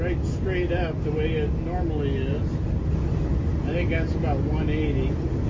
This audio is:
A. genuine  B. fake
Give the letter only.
A